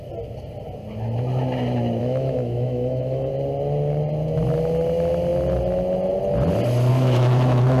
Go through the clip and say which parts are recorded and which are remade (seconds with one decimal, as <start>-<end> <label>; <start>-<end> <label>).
0.0-2.0 recorded; 2.0-3.3 remade; 3.3-6.9 recorded; 6.9-7.8 remade